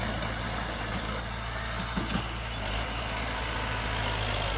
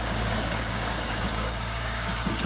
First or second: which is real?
first